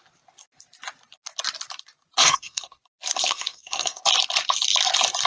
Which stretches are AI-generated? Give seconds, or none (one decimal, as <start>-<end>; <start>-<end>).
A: 2.2-2.8; 3.2-4.0